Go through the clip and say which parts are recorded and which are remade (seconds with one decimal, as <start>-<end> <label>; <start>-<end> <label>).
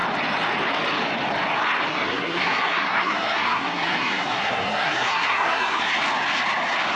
0.0-1.9 recorded; 1.9-5.9 remade; 5.9-7.0 recorded